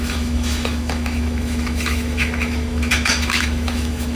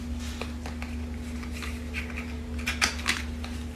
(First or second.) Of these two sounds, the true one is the second